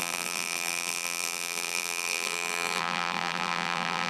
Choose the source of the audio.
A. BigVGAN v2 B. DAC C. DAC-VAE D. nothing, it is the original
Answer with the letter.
A